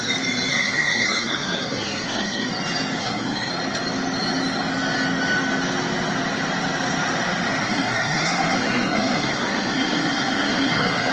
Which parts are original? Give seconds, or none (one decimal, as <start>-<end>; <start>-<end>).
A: 0.0-0.5; 2.5-3.0; 3.5-7.6